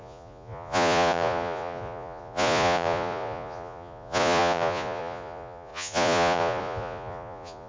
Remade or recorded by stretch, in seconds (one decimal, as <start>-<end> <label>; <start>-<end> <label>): 0.0-7.7 remade